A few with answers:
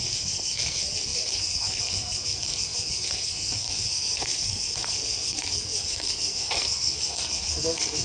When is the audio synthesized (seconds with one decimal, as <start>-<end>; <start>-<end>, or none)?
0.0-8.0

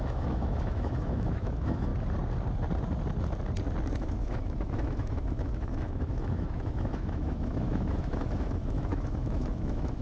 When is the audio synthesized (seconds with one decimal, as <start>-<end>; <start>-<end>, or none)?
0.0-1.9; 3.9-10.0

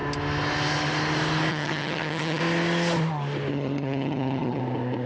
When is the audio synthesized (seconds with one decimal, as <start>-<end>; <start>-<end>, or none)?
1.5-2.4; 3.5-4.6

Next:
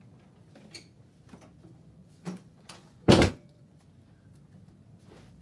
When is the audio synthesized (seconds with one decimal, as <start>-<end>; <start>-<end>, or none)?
2.0-3.8